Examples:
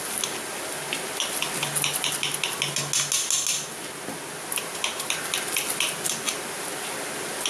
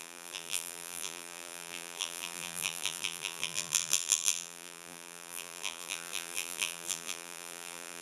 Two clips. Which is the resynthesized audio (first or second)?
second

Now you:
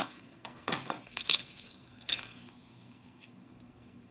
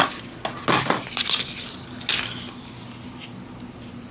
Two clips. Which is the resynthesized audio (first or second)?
first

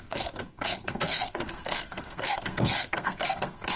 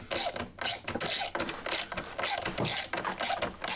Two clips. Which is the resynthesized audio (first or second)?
first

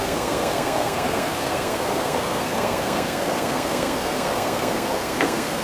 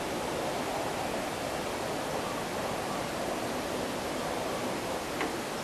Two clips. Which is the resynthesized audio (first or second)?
first